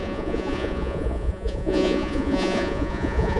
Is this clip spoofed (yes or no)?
yes